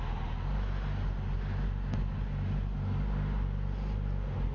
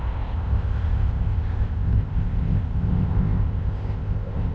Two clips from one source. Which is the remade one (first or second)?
second